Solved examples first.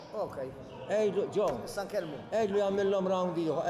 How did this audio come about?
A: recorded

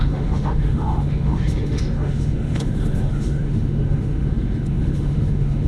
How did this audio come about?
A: remade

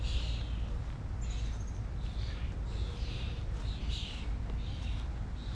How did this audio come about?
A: recorded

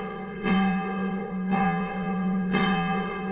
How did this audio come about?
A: remade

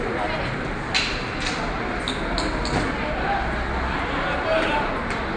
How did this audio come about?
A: recorded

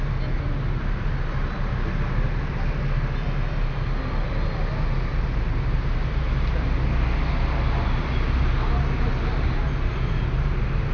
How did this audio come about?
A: recorded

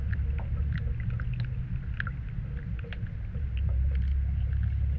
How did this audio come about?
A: recorded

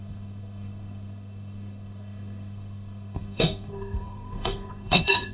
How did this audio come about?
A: remade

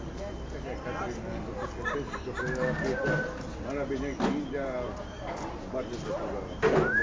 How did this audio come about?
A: recorded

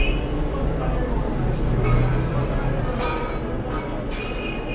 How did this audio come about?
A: recorded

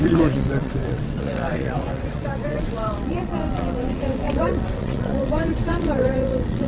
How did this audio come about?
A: remade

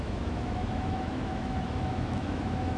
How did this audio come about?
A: remade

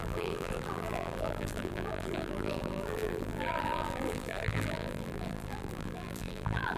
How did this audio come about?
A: remade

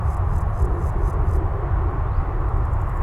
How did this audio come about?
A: recorded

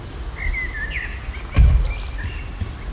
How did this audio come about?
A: recorded